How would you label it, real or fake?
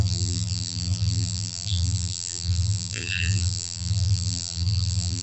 fake